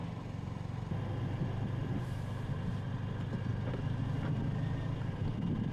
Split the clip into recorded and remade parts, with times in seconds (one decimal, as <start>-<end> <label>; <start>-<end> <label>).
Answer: 0.0-5.7 recorded